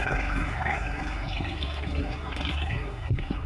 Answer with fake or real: fake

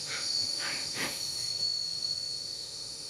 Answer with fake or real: fake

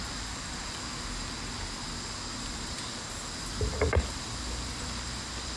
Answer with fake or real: real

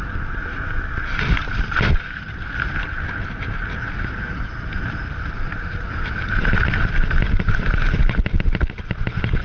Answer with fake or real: real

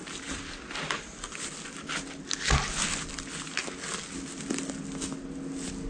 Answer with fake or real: real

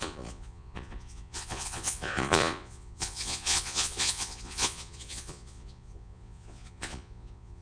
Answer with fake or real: fake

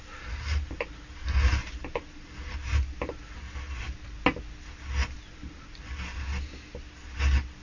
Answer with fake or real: real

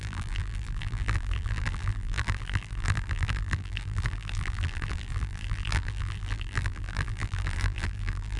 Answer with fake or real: fake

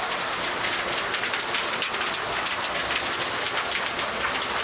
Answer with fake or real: real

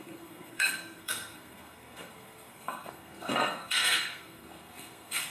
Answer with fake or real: fake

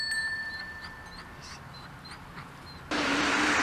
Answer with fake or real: real